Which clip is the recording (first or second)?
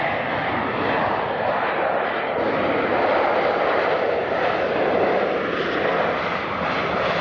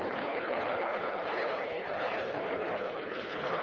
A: first